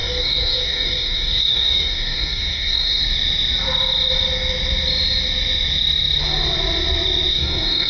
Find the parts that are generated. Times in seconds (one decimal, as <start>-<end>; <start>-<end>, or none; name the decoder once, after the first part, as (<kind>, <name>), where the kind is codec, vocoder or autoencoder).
0.0-3.0 (codec, DAC); 7.3-7.9